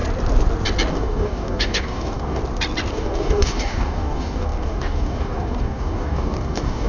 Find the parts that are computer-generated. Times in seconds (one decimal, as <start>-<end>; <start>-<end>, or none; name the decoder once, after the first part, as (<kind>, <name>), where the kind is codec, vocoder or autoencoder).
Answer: 0.9-2.4 (codec, DAC); 2.9-6.9